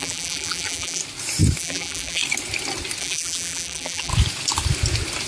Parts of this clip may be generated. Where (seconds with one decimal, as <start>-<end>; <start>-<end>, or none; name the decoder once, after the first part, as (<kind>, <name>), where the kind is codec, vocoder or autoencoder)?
0.0-1.0 (vocoder, BigVGAN v2); 1.6-2.2; 3.0-4.1